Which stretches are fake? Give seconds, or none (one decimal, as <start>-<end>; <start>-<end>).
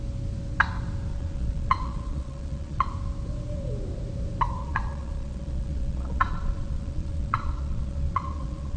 1.1-2.9; 4.6-8.8